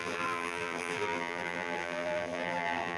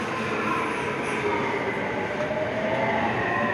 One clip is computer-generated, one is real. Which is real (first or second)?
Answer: second